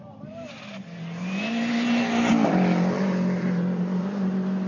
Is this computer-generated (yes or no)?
no